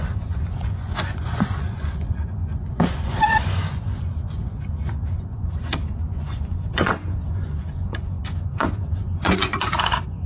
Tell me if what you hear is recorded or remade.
remade